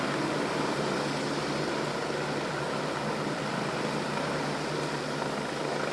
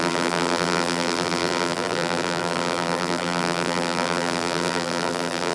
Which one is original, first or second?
first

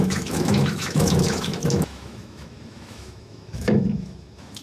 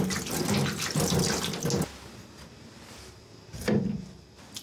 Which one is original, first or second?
second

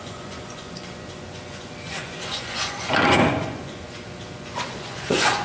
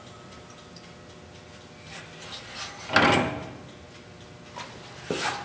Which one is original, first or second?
second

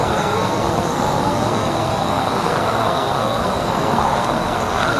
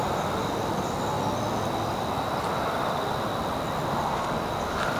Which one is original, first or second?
second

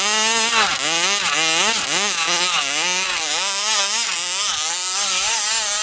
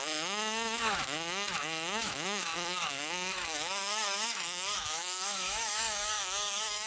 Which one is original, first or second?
first